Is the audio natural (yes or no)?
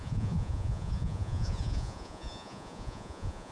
no